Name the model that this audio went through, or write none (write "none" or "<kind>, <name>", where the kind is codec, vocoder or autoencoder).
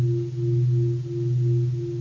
none